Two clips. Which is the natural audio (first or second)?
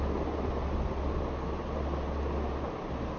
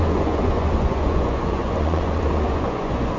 first